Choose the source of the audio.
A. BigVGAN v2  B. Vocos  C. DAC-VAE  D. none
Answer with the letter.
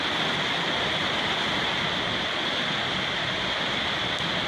D